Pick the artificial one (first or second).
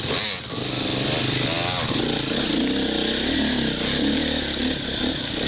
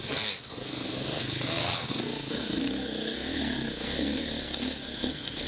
second